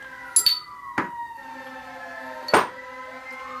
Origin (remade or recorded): recorded